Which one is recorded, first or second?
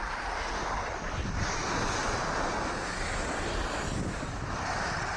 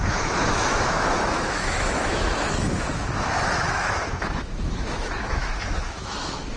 first